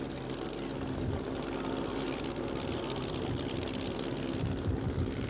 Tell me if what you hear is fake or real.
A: real